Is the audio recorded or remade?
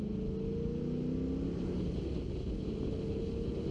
recorded